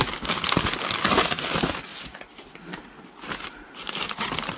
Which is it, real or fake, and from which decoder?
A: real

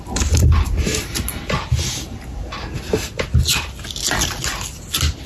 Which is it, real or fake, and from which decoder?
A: real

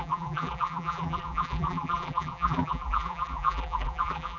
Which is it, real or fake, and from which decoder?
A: fake, vocoder, BigVGAN v2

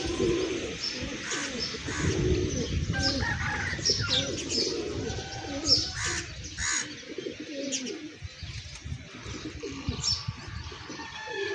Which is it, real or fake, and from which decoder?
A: real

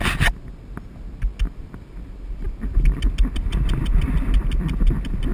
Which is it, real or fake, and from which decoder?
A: real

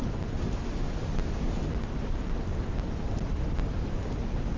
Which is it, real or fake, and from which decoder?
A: real